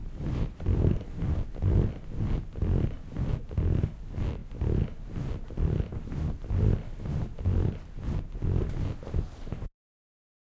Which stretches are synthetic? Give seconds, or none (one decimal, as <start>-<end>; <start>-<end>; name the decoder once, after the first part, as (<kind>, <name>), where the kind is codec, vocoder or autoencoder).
0.0-1.2 (vocoder, BigVGAN v2)